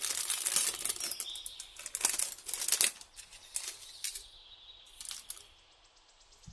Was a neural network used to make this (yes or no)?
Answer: no